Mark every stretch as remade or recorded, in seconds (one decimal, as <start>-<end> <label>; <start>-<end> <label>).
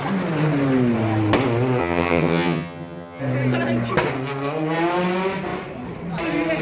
0.0-1.8 recorded; 1.8-3.2 remade; 3.2-6.6 recorded